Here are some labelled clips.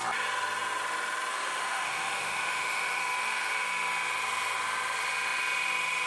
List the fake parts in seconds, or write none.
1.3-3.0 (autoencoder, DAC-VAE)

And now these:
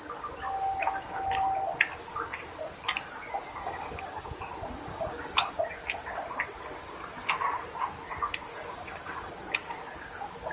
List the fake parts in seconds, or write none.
3.4-4.3 (codec, DAC); 4.9-5.5; 6.8-7.3; 8.5-9.3

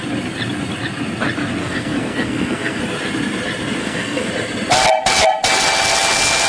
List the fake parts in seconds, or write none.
1.6-2.8 (codec, SNAC); 3.8-4.3

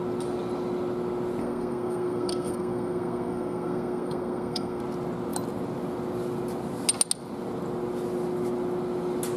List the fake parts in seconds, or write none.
1.4-4.8 (codec, SNAC)

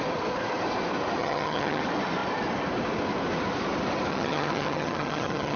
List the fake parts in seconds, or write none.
1.2-1.8 (vocoder, HiFi-GAN); 4.1-5.6

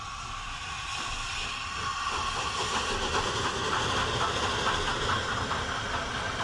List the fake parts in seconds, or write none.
none

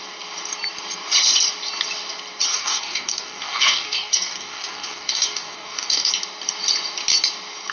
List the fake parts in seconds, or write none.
2.5-6.1 (codec, DAC)